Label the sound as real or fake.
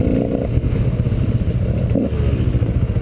real